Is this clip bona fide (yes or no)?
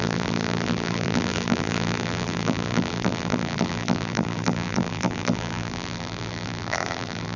no